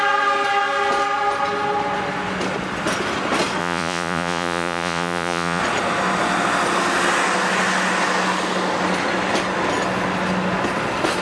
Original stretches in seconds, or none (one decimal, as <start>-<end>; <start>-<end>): 0.0-3.6; 5.6-11.2